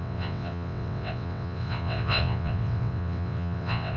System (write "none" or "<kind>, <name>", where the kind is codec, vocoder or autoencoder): vocoder, WaveNeXt